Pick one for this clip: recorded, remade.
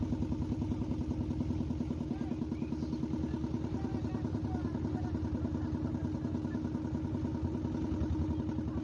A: recorded